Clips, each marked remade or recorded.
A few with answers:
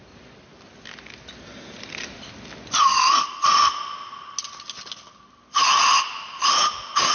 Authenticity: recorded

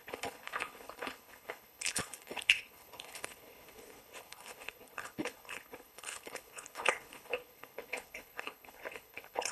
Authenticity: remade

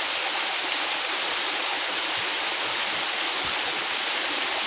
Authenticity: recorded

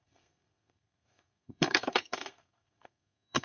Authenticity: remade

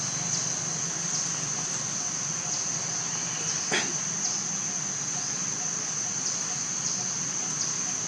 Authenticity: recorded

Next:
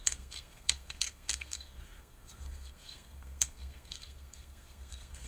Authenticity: remade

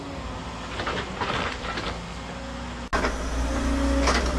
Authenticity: recorded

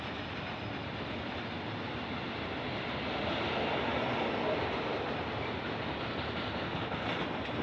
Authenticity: recorded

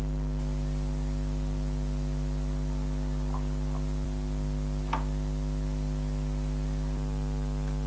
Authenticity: recorded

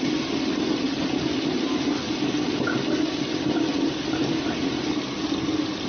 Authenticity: recorded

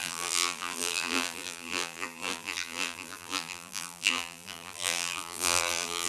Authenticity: remade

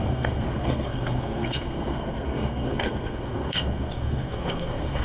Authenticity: remade